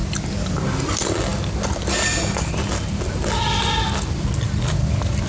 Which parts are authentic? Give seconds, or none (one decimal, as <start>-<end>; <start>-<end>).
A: 0.0-5.3